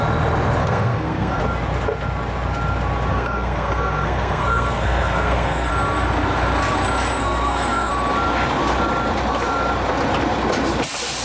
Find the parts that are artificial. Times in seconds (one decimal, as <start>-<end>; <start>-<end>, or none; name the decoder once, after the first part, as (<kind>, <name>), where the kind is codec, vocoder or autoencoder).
0.6-1.4 (codec, SNAC); 3.1-5.7; 7.2-7.9